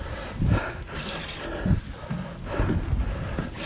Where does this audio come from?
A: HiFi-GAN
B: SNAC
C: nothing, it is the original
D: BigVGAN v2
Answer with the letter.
C